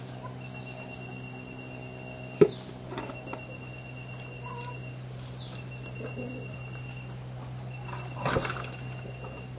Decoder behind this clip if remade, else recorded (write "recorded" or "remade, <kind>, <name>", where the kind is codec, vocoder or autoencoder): recorded